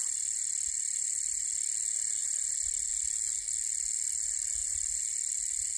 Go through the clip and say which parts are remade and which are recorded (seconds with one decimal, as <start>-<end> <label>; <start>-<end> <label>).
0.0-1.5 remade; 1.5-2.2 recorded; 2.2-2.9 remade; 2.9-4.6 recorded; 4.6-5.8 remade